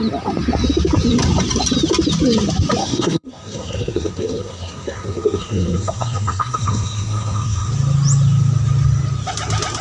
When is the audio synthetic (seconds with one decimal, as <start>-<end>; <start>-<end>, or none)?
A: 2.8-7.7